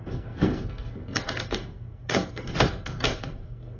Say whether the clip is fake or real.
fake